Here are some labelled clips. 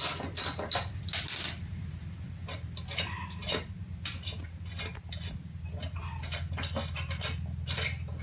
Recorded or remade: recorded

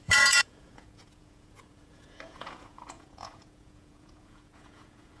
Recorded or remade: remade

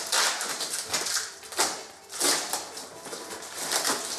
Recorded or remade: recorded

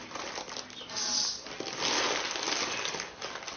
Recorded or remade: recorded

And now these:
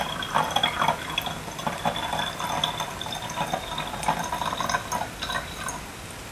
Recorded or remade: recorded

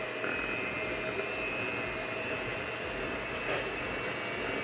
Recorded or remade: recorded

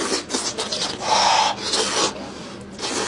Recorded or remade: recorded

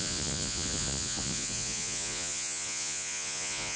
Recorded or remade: remade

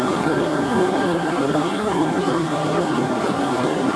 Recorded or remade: remade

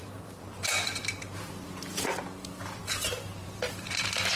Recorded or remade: remade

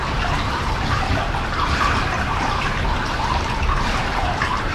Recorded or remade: remade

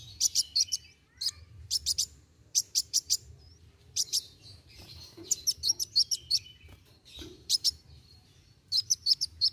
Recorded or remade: remade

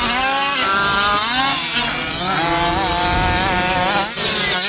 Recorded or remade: recorded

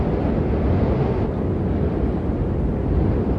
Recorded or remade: recorded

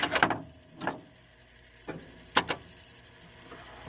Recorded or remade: recorded